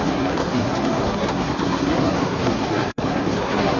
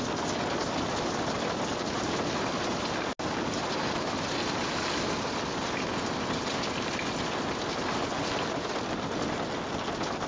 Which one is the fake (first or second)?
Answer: first